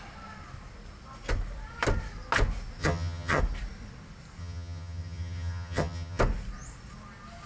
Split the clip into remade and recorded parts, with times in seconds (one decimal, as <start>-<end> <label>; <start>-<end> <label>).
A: 0.0-2.8 recorded; 2.8-3.4 remade; 3.4-4.4 recorded; 4.4-6.2 remade; 6.2-7.5 recorded